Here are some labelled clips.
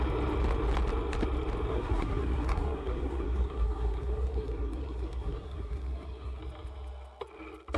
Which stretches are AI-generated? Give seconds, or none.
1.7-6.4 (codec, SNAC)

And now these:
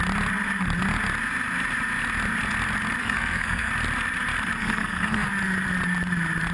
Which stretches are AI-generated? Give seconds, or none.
3.0-3.7 (codec, SNAC); 4.6-5.3

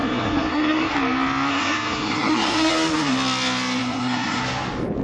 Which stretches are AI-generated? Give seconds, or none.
0.0-0.9 (codec, SNAC); 1.5-2.7; 3.8-4.4